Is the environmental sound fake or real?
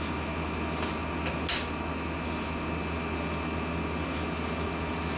real